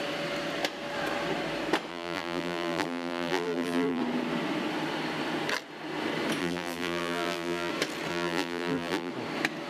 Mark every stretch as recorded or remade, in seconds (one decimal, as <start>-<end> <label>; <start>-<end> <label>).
0.0-1.9 recorded; 1.9-4.0 remade; 4.0-6.4 recorded; 6.4-7.7 remade; 7.7-8.1 recorded; 8.1-9.1 remade; 9.1-9.7 recorded

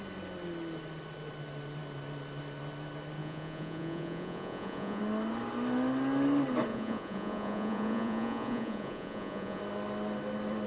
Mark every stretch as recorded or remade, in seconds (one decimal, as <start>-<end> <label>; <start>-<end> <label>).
0.0-3.2 recorded; 3.2-5.0 remade; 5.0-6.7 recorded; 6.7-9.6 remade; 9.6-10.7 recorded

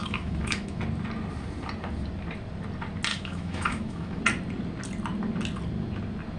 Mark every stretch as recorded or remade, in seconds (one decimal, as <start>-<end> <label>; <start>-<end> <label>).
0.0-0.8 remade; 0.8-3.1 recorded; 3.1-4.2 remade; 4.2-6.4 recorded

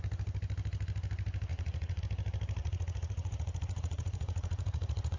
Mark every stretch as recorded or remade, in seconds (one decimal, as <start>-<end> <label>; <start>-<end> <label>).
0.0-1.5 recorded; 1.5-2.0 remade; 2.0-2.6 recorded; 2.6-5.2 remade

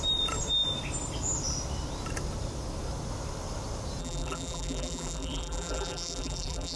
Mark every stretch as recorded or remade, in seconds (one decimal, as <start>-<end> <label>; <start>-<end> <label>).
0.0-4.0 recorded; 4.0-6.8 remade

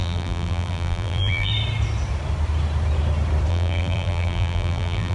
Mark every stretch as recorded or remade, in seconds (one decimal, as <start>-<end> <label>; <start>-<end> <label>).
0.0-1.5 remade; 1.5-3.5 recorded; 3.5-5.1 remade

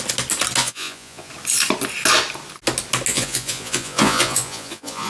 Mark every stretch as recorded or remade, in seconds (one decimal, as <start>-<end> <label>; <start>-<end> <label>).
0.0-0.6 recorded; 0.6-1.3 remade; 1.3-3.1 recorded; 3.1-5.1 remade

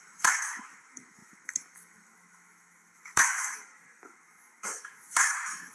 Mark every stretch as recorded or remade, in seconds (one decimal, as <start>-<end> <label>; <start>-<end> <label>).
0.0-5.7 remade